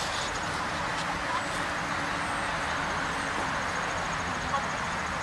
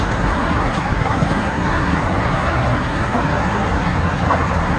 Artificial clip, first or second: second